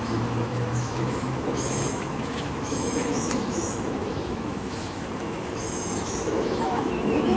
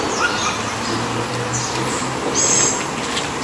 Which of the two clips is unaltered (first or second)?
second